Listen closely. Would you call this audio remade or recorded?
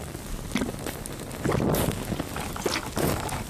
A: recorded